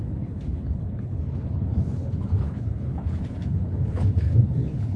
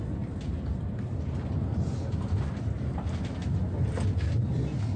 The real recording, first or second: second